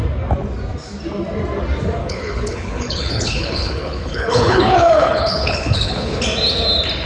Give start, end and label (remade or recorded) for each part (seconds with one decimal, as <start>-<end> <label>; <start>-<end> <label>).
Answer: 0.0-2.0 recorded; 2.0-6.2 remade; 6.2-7.1 recorded